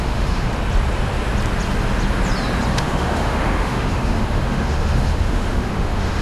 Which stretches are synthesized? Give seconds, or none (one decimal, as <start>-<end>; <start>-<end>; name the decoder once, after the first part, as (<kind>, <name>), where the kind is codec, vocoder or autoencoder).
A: 0.0-0.5 (autoencoder, DAC-VAE); 2.7-6.2